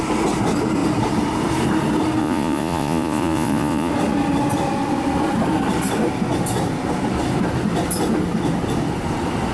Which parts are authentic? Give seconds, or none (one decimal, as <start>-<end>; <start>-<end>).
0.0-2.2; 3.9-9.5